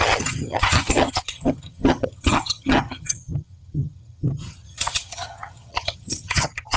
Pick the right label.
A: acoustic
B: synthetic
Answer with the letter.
B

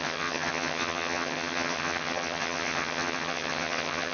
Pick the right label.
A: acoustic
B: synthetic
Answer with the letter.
B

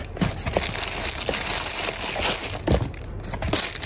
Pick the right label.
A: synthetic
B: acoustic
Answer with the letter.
B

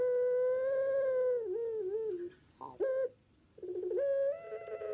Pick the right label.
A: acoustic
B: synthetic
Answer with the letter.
A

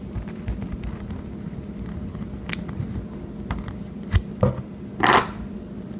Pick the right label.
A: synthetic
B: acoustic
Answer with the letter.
B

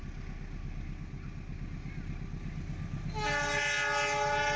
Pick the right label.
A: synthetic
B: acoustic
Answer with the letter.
B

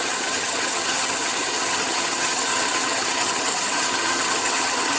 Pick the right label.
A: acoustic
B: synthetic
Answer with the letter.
B